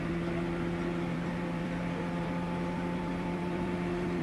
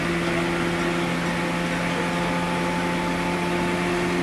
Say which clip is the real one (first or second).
second